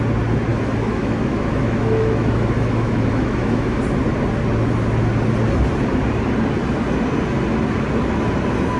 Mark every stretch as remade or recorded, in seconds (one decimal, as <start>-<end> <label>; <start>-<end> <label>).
0.0-0.5 recorded; 0.5-3.8 remade; 3.8-8.8 recorded